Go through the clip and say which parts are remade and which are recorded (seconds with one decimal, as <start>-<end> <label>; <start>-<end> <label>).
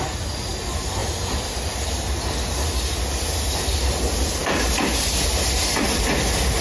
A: 0.0-1.0 recorded; 1.0-2.2 remade; 2.2-4.4 recorded; 4.4-6.0 remade; 6.0-6.6 recorded